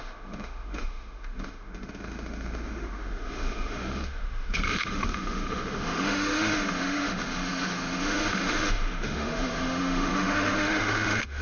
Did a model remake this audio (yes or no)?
yes